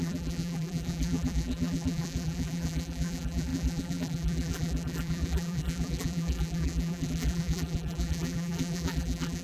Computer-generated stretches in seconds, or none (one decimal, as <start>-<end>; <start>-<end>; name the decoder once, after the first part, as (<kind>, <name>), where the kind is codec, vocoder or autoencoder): 0.0-9.4 (vocoder, BigVGAN v2)